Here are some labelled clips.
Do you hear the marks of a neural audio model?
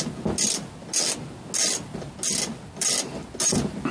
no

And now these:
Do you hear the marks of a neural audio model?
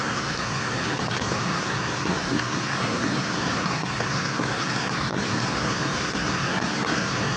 yes